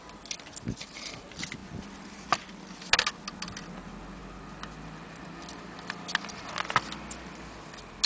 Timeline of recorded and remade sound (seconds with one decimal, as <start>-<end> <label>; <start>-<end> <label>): 0.0-8.1 recorded